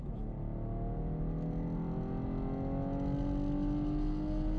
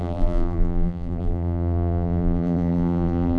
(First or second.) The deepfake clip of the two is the second